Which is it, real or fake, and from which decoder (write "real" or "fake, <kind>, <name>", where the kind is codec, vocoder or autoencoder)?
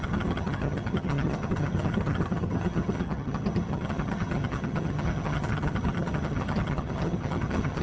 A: fake, vocoder, HiFi-GAN